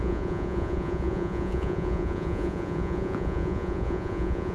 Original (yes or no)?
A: no